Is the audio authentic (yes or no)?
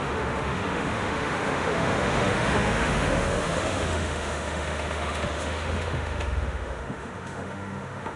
no